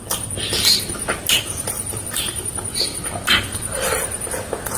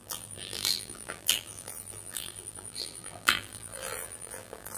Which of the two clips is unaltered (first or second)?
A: first